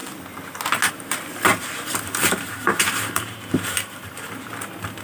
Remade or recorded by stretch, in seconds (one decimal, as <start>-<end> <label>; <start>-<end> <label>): 0.0-1.5 recorded; 1.5-4.5 remade; 4.5-5.0 recorded